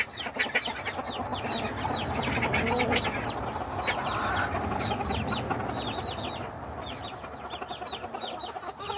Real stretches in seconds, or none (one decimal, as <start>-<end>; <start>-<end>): 0.0-9.0